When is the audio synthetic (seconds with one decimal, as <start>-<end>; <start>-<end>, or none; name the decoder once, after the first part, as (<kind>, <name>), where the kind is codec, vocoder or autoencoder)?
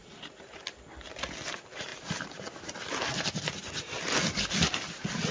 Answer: none